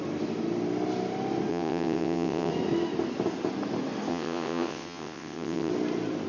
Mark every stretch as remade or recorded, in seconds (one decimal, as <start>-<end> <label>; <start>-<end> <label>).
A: 0.0-1.5 recorded; 1.5-2.5 remade; 2.5-4.1 recorded; 4.1-5.7 remade; 5.7-6.3 recorded